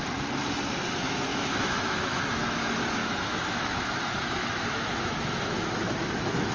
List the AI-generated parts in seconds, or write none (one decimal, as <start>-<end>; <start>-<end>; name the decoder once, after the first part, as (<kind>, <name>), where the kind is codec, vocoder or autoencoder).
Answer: 0.9-6.5 (autoencoder, DAC-VAE)